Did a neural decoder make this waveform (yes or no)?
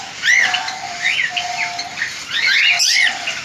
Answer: no